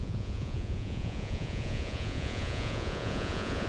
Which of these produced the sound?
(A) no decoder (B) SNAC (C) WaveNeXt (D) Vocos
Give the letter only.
D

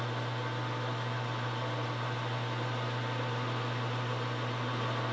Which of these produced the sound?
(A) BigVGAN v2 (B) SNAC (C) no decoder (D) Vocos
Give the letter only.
C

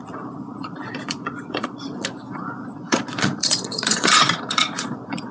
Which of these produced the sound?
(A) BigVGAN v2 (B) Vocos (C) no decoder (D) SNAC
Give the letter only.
B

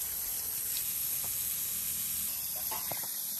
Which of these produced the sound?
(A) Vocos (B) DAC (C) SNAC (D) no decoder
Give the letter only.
D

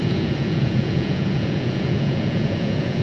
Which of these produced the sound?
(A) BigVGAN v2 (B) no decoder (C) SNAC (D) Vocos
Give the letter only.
D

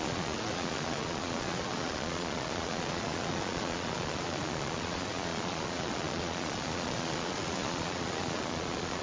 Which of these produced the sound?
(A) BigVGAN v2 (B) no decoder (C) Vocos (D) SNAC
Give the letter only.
C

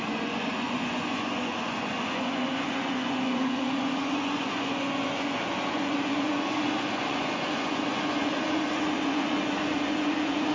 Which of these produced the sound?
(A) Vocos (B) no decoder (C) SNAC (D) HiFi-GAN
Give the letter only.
A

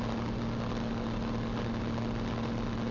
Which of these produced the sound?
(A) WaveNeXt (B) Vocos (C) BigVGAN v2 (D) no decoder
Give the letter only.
D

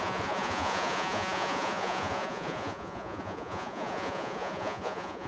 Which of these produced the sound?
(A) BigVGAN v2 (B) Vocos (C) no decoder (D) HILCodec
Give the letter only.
B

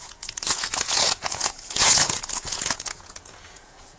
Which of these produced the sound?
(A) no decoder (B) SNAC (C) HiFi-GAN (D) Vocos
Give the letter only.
D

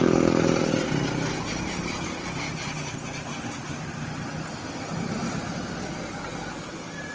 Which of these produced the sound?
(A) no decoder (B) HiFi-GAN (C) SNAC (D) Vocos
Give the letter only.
A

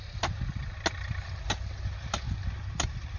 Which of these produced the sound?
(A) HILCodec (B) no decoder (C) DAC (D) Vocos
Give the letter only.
B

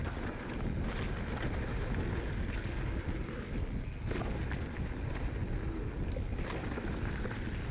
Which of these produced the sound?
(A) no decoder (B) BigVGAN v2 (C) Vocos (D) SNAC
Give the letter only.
A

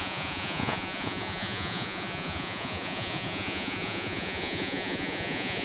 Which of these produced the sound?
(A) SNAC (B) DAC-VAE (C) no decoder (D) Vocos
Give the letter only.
D